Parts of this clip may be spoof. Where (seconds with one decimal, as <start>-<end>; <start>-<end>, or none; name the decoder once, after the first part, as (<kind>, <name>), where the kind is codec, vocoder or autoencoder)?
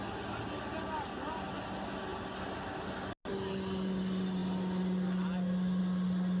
none